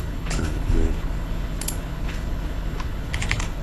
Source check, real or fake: fake